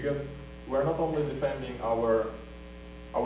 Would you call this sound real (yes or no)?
yes